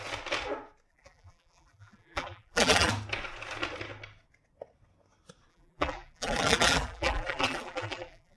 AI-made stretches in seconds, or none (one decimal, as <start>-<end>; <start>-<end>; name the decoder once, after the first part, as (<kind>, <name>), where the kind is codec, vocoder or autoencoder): 0.9-2.9 (vocoder, BigVGAN v2); 5.5-8.4